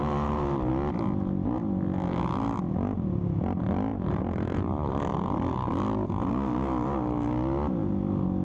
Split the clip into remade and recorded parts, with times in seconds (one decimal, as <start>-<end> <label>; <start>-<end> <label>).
0.0-3.9 recorded; 3.9-4.9 remade; 4.9-8.4 recorded